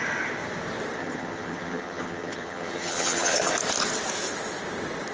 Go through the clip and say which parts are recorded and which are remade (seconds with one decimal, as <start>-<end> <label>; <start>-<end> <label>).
0.0-1.0 recorded; 1.0-3.5 remade; 3.5-5.1 recorded